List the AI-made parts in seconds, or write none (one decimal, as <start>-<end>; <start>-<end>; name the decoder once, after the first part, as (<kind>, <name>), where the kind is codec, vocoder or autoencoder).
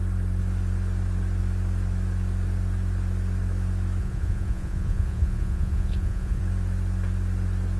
4.0-6.4 (vocoder, Vocos)